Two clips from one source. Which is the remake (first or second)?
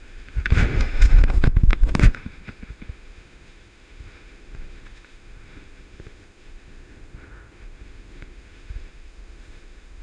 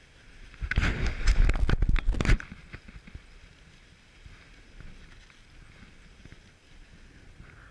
first